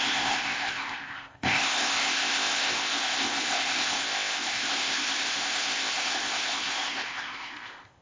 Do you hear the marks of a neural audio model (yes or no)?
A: yes